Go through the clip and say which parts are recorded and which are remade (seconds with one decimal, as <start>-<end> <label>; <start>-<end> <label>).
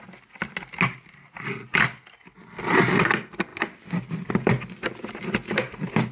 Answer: 0.0-6.1 recorded